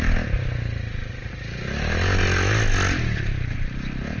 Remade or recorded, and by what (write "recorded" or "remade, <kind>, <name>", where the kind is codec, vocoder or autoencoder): recorded